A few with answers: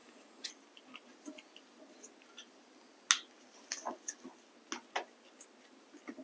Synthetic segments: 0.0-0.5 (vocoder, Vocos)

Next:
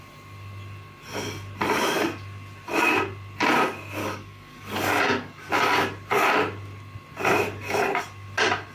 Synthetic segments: 4.0-5.5 (codec, DAC)